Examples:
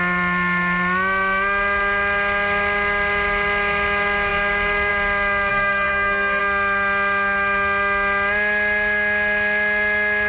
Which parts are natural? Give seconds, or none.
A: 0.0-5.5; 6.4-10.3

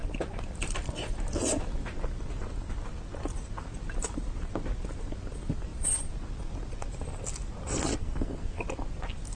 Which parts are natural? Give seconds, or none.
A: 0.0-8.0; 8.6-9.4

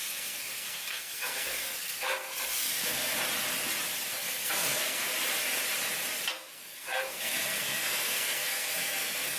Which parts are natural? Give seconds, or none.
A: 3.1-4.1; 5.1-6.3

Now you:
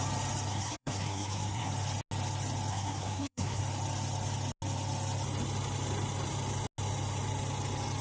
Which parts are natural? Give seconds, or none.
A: 0.0-0.5; 1.7-2.7; 3.6-8.0

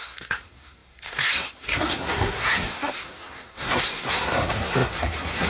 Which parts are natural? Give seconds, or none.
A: none

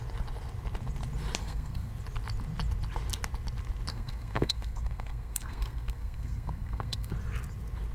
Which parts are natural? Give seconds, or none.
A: 0.0-1.4; 1.9-3.9; 7.1-7.9